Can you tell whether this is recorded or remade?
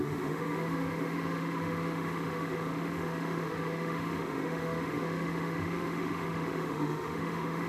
remade